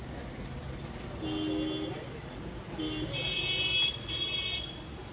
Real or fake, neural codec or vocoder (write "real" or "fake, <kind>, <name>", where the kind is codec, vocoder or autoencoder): real